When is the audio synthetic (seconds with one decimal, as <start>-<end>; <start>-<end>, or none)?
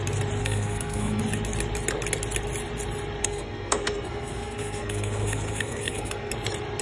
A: 0.4-1.2; 3.2-6.3